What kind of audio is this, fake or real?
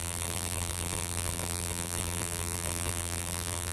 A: fake